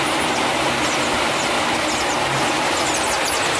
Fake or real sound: real